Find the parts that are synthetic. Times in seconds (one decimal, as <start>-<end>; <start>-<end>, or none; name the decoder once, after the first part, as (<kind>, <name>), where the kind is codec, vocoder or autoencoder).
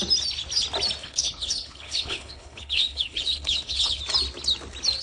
1.0-4.0 (codec, HILCodec)